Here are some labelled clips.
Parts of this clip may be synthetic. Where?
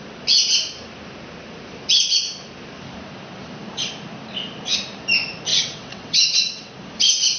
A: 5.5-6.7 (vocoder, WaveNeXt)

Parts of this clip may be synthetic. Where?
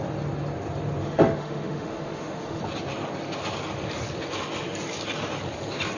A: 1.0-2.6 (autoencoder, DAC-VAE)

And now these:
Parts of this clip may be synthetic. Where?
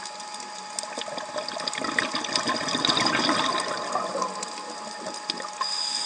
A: none